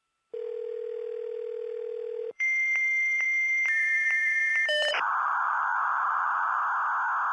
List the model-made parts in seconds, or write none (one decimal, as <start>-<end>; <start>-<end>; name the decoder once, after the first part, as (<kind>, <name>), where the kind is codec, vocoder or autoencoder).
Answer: 2.2-6.6 (vocoder, BigVGAN v2)